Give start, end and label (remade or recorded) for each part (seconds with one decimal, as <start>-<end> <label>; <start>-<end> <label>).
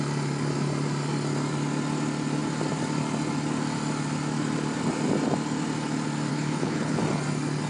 0.0-6.3 recorded; 6.3-7.0 remade; 7.0-7.7 recorded